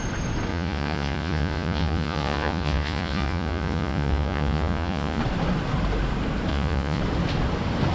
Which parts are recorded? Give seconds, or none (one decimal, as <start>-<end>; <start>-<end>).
0.0-0.5; 5.2-6.5; 7.0-7.9